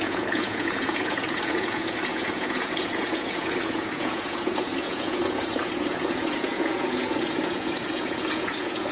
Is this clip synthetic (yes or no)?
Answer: yes